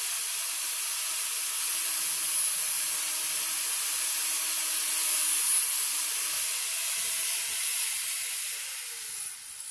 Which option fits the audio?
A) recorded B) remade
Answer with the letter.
A